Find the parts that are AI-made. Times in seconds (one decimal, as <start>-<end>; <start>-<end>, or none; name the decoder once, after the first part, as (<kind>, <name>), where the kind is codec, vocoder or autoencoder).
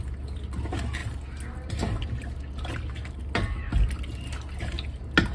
3.7-4.2 (vocoder, BigVGAN v2)